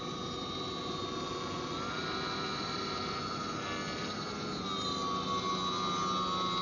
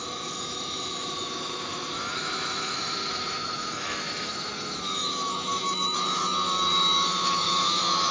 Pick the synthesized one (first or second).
second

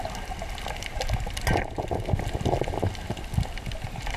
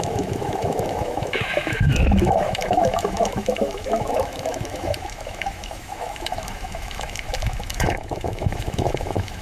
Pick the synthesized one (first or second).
second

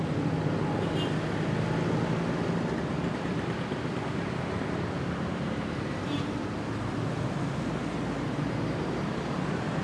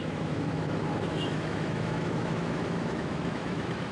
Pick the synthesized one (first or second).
second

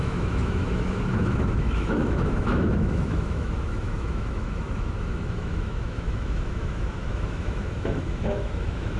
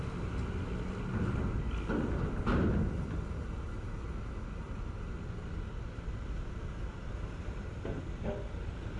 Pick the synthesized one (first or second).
first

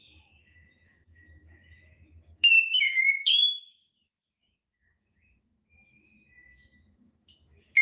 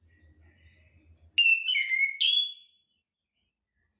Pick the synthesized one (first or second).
first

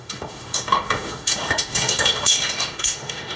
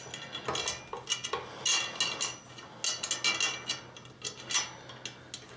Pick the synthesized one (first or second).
first